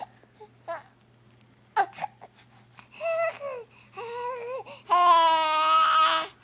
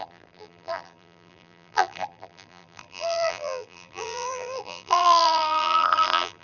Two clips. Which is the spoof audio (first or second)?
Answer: second